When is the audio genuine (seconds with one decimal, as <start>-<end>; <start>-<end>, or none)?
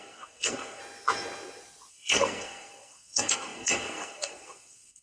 0.8-1.9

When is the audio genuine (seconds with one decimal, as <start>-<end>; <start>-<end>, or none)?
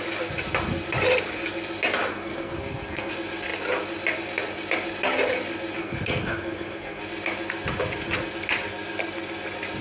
0.0-2.1; 3.1-5.8; 7.0-9.8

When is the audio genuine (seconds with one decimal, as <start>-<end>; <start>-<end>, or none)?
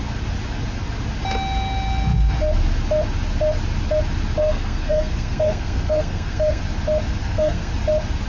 0.0-4.4; 6.6-7.2; 7.7-8.3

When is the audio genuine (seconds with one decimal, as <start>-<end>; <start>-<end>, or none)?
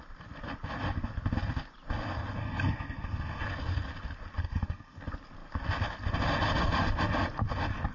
0.0-2.4; 3.4-4.4; 5.0-7.9